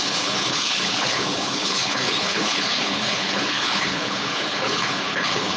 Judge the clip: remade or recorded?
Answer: remade